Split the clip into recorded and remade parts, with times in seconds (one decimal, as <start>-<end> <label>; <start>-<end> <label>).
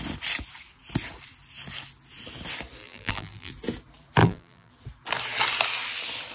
0.0-2.8 recorded; 2.8-3.5 remade; 3.5-4.2 recorded; 4.2-4.7 remade; 4.7-6.3 recorded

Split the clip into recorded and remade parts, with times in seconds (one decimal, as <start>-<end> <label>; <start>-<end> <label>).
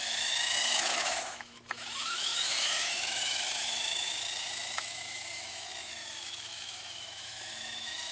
0.0-8.1 remade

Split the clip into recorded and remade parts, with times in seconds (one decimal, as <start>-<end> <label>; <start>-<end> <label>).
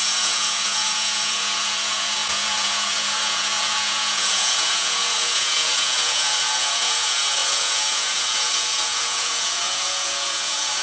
0.0-10.8 remade